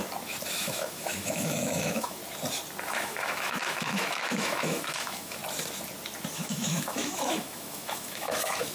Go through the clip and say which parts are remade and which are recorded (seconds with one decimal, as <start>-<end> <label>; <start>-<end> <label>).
0.0-0.6 recorded; 0.6-2.2 remade; 2.2-2.9 recorded; 2.9-5.4 remade; 5.4-6.3 recorded; 6.3-8.7 remade